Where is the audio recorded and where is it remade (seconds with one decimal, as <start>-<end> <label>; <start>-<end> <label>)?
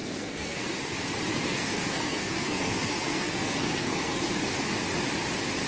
0.0-0.7 remade; 0.7-1.3 recorded; 1.3-4.5 remade; 4.5-5.7 recorded